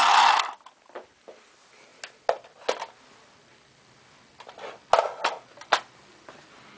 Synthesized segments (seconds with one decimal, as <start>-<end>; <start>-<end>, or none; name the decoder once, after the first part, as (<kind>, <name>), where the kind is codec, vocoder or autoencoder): none